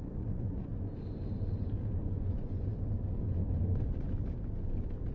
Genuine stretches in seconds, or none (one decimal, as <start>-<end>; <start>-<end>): 0.7-2.0; 2.7-3.3; 4.1-5.1